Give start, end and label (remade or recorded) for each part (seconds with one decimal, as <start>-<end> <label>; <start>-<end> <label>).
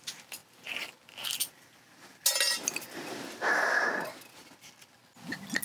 0.0-5.6 recorded